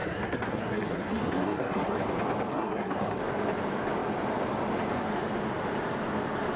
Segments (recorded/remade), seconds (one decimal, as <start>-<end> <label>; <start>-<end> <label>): 0.0-2.0 remade; 2.0-2.5 recorded; 2.5-3.2 remade; 3.2-6.6 recorded